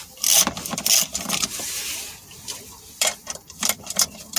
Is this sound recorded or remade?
remade